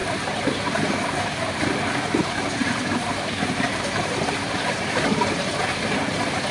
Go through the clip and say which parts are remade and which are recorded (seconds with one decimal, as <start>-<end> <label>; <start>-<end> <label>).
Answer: 0.0-0.6 remade; 0.6-2.6 recorded; 2.6-5.5 remade; 5.5-6.5 recorded